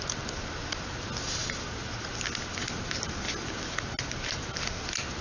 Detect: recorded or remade recorded